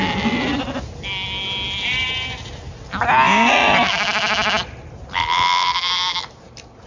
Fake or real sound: real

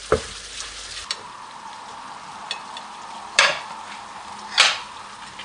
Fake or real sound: real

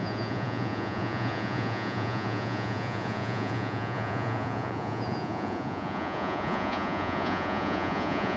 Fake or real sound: fake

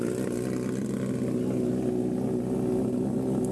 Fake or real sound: real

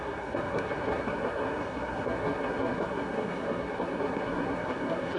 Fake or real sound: fake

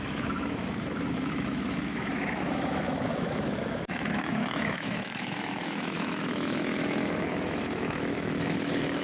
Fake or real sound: fake